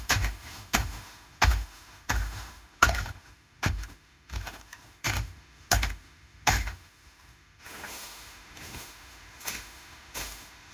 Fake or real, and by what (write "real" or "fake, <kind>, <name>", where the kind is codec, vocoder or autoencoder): fake, autoencoder, DAC-VAE